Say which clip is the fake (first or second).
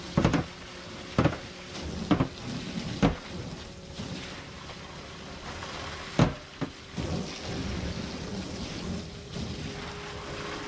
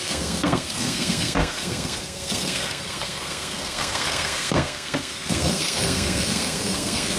second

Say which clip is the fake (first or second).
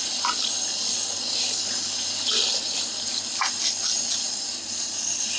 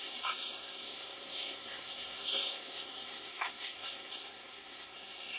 second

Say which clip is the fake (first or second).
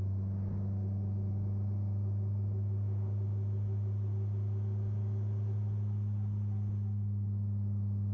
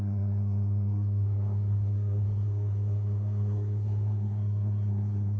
second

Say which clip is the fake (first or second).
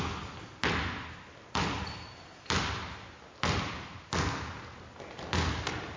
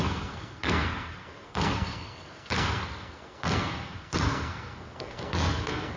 second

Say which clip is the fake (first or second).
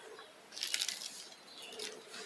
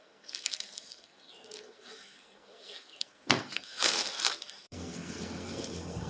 second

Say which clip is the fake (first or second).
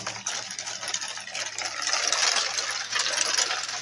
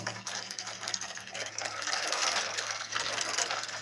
second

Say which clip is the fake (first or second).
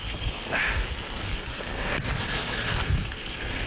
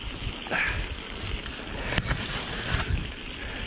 first